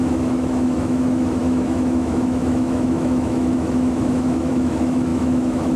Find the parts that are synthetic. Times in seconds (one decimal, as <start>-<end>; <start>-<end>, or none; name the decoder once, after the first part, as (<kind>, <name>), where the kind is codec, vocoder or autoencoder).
0.0-5.8 (autoencoder, DAC-VAE)